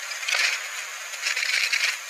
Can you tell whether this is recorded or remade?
recorded